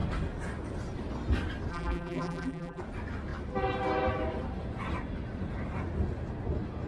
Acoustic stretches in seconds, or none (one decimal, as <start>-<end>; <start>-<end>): 0.0-1.7; 2.8-6.9